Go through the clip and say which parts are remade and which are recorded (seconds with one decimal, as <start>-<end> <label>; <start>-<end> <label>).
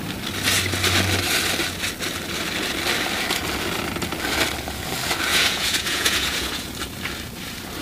0.0-5.3 recorded; 5.3-6.7 remade; 6.7-7.8 recorded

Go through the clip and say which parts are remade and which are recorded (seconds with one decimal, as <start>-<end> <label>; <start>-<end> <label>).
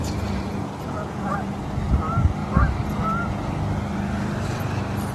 0.0-1.6 remade; 1.6-5.1 recorded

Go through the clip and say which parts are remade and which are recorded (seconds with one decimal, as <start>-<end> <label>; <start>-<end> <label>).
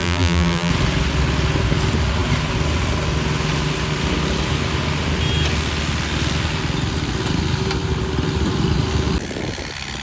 0.0-0.7 remade; 0.7-10.0 recorded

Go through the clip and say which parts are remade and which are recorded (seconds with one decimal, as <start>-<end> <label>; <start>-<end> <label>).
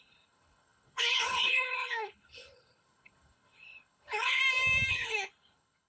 0.0-4.4 remade; 4.4-4.9 recorded; 4.9-5.9 remade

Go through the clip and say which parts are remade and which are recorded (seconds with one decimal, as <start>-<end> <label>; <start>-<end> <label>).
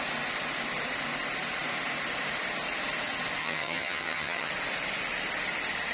0.0-3.4 recorded; 3.4-4.5 remade; 4.5-5.9 recorded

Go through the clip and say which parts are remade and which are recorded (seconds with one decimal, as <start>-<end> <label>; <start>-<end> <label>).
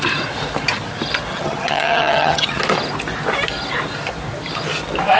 0.0-1.3 recorded; 1.3-2.6 remade; 2.6-5.2 recorded